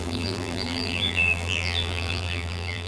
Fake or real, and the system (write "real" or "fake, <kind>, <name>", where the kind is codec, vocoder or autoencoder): fake, vocoder, BigVGAN v2